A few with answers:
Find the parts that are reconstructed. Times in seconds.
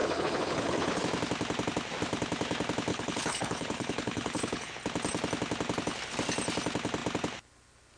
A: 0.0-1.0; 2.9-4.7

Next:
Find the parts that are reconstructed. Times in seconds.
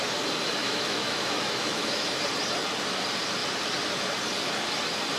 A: 0.6-2.2